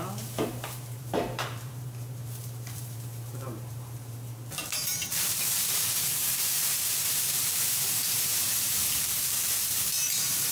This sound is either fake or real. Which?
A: fake